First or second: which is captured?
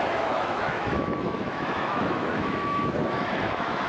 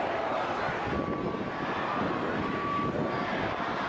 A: second